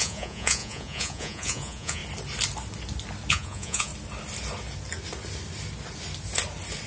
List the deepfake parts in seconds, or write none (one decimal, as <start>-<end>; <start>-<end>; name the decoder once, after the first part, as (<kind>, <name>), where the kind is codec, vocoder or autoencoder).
0.0-2.0 (vocoder, Vocos); 3.3-3.9